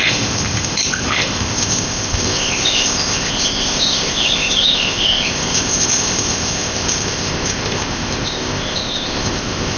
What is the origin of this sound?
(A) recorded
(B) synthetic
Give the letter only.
B